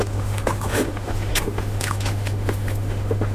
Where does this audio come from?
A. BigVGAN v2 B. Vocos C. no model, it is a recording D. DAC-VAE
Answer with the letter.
D